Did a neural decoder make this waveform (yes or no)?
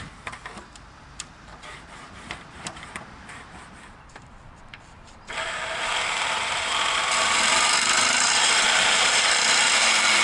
yes